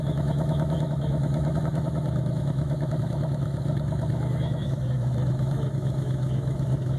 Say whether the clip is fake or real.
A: fake